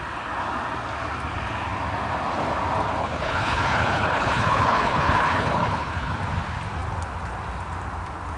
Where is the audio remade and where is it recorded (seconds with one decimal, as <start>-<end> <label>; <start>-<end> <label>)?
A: 0.0-3.0 recorded; 3.0-6.2 remade; 6.2-8.4 recorded